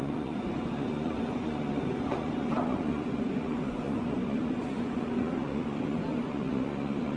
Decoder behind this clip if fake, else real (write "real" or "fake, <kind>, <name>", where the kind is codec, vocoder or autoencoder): fake, vocoder, Vocos